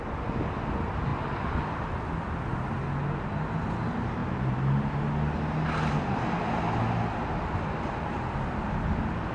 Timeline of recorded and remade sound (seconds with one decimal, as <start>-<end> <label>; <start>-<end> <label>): 0.0-9.3 recorded